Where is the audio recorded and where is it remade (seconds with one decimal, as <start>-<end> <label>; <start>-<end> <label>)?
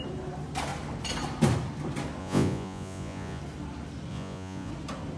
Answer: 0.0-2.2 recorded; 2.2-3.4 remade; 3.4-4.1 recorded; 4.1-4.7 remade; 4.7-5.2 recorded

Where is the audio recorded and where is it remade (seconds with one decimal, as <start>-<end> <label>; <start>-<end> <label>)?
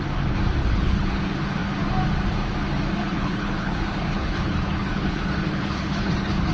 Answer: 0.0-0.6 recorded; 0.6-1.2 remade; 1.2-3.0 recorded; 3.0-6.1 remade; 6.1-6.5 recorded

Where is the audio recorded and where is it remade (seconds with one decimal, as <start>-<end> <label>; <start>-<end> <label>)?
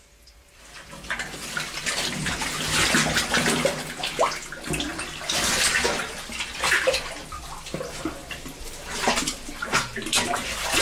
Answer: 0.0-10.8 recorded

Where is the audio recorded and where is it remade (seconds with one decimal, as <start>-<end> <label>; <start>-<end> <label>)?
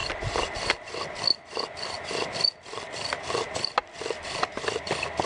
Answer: 0.0-5.3 recorded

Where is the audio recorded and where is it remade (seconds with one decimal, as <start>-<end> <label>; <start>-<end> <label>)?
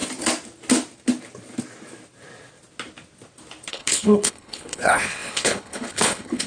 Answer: 0.0-3.7 recorded; 3.7-6.5 remade